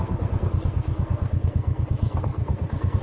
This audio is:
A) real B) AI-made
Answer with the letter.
B